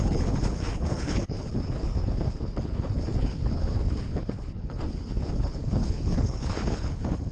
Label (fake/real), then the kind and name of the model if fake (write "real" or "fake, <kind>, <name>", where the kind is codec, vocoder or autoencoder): fake, codec, HILCodec